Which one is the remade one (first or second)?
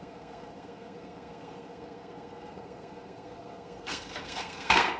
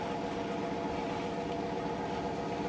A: first